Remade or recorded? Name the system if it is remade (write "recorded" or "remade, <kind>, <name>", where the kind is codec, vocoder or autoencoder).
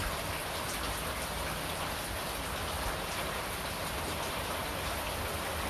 recorded